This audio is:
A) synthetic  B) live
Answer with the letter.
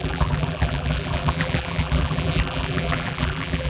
A